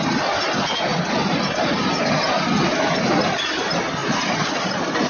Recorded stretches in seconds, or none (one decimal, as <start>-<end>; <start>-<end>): 0.0-4.0